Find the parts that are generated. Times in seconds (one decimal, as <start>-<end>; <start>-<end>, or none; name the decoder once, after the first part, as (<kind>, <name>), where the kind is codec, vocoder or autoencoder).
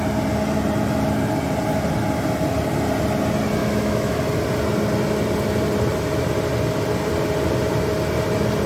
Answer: 3.6-4.2 (autoencoder, DAC-VAE)